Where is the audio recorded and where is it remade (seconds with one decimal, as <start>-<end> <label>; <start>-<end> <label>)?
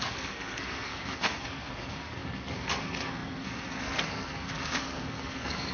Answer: 0.0-5.7 remade